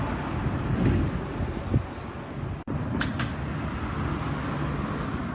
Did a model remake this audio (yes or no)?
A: no